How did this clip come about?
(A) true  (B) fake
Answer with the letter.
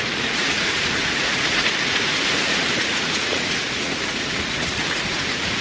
B